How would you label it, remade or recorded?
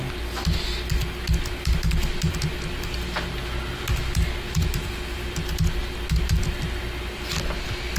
recorded